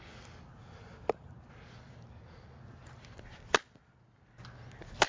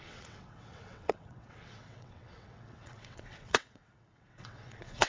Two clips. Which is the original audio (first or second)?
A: first